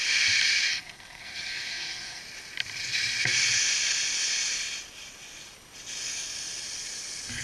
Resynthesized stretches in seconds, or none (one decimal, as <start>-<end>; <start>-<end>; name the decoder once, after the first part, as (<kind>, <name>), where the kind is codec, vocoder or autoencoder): 0.7-2.2 (codec, SNAC)